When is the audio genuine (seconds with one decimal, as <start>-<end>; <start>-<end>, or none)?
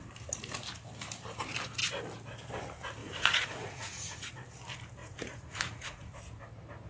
0.0-3.0; 4.3-5.0; 6.2-6.9